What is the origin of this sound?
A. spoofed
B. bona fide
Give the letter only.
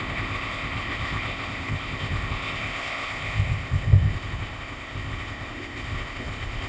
A